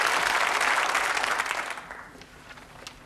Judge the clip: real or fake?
real